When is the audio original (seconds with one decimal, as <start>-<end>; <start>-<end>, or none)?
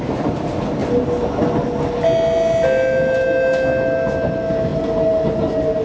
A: 0.0-5.8